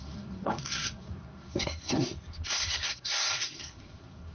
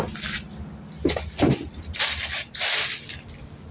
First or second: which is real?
second